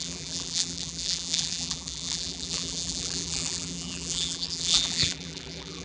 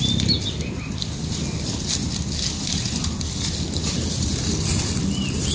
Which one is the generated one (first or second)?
first